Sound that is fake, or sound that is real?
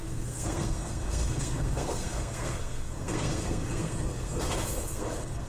fake